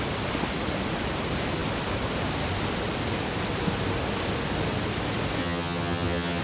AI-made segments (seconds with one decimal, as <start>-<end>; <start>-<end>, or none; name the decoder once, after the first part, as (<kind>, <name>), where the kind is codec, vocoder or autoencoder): 5.4-6.4 (vocoder, HiFi-GAN)